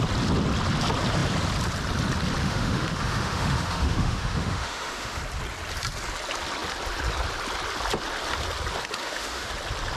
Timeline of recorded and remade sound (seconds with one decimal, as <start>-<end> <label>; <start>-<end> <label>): 0.0-2.4 recorded; 2.4-5.2 remade; 5.2-9.0 recorded; 9.0-9.5 remade; 9.5-10.0 recorded